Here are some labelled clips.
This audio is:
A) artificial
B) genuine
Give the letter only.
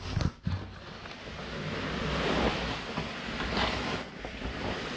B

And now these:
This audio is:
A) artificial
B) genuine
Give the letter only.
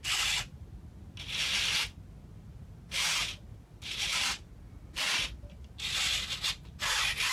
B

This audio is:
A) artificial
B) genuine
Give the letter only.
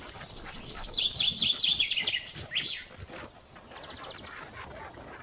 B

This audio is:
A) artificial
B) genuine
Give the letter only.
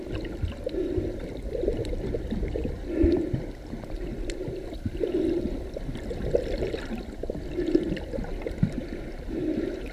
B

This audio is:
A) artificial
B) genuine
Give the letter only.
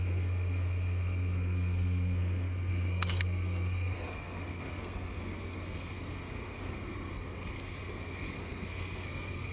A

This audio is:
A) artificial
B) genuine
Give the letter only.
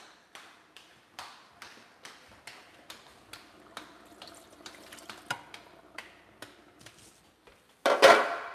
B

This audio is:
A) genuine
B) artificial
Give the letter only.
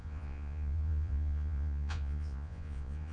B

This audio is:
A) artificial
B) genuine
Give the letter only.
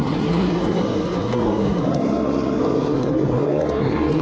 A